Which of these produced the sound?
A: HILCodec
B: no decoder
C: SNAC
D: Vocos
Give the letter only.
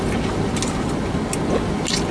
B